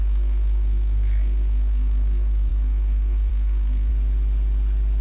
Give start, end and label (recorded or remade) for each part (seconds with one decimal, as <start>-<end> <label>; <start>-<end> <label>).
0.0-3.9 remade; 3.9-5.0 recorded